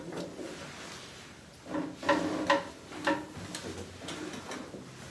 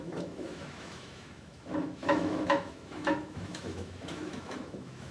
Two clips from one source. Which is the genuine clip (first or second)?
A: first